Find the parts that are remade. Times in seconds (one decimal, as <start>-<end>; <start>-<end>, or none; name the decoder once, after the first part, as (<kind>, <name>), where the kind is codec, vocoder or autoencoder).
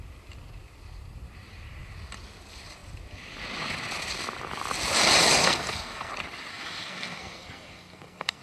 5.4-6.1 (codec, SNAC); 6.5-8.4